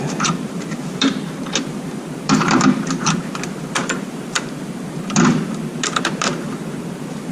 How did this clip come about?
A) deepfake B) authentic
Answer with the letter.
A